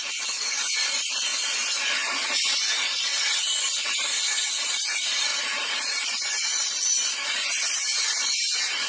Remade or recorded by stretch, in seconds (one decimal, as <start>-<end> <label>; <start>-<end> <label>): 0.0-1.3 remade; 1.3-4.7 recorded; 4.7-8.9 remade